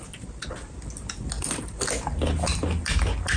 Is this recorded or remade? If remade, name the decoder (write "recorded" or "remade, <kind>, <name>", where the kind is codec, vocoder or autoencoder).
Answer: recorded